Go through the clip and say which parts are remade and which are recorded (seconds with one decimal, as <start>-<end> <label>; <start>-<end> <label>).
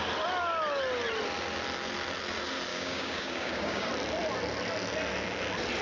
0.0-2.7 recorded; 2.7-3.9 remade; 3.9-5.8 recorded